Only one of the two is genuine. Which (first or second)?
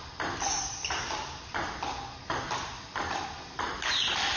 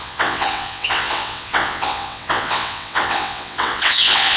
first